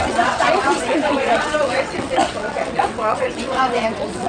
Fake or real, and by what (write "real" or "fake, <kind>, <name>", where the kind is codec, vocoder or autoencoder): fake, vocoder, WaveNeXt